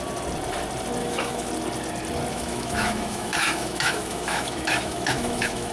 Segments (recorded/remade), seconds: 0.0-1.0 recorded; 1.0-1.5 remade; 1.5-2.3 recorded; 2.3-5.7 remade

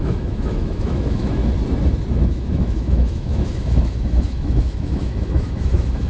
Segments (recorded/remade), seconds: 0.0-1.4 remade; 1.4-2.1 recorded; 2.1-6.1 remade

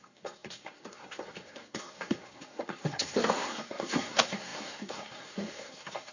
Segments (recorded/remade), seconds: 0.0-6.1 remade

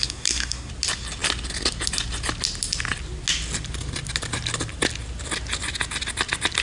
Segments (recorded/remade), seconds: 0.0-0.7 remade; 0.7-6.6 recorded

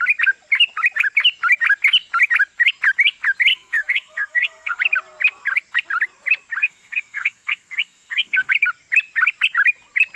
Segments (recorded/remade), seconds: 0.0-3.5 recorded; 3.5-4.8 remade; 4.8-6.6 recorded; 6.6-8.5 remade; 8.5-10.2 recorded